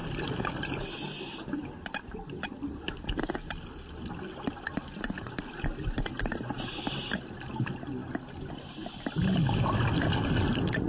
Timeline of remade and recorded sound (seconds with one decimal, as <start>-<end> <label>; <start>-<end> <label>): 0.0-10.9 recorded